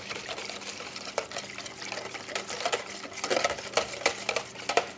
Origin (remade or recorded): recorded